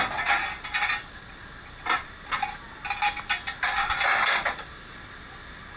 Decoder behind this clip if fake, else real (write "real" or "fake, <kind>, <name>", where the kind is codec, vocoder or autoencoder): real